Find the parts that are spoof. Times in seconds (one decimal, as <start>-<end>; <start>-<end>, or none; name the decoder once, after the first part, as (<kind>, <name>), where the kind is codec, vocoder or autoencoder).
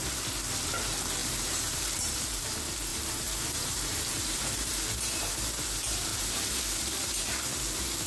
1.2-2.4 (vocoder, BigVGAN v2); 2.9-5.3; 6.1-6.6